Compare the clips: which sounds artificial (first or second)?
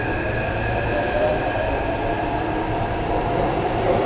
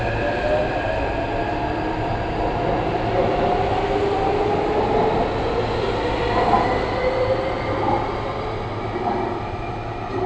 first